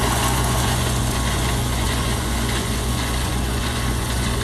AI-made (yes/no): yes